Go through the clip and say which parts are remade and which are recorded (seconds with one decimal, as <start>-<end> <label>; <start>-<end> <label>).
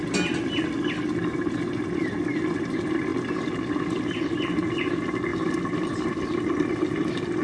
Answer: 0.0-7.4 recorded